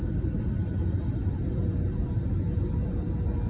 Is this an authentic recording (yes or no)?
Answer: yes